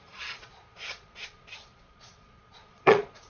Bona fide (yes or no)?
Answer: no